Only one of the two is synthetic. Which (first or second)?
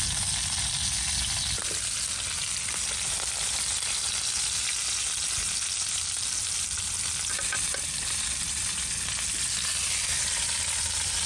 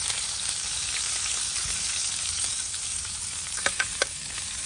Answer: second